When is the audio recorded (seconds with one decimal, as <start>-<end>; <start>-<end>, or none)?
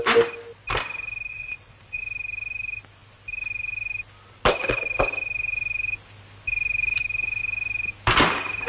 0.0-1.3; 2.0-8.7